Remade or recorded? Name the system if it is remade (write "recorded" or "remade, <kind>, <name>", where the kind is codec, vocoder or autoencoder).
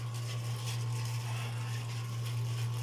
recorded